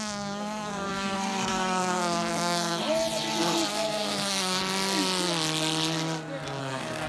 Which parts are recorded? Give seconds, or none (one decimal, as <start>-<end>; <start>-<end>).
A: 2.8-3.7; 4.6-6.6